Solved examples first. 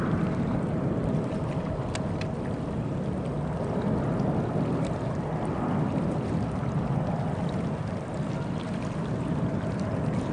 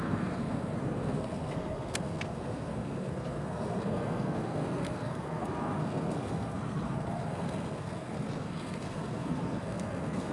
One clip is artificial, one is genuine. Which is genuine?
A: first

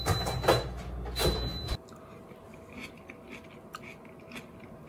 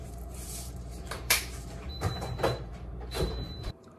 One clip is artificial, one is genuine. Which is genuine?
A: first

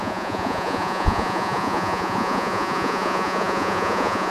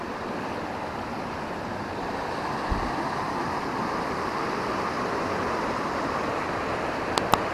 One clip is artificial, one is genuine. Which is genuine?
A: second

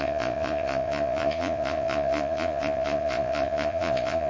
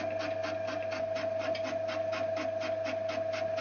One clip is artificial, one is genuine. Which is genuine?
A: second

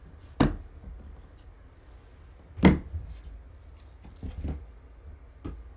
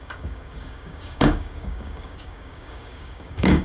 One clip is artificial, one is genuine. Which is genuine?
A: first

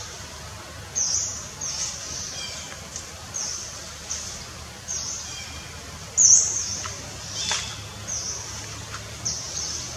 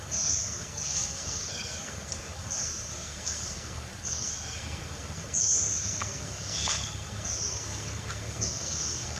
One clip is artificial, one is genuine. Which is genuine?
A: first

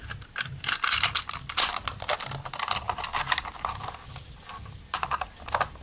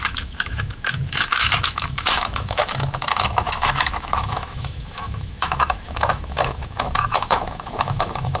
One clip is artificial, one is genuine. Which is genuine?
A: first